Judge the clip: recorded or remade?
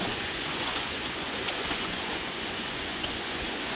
remade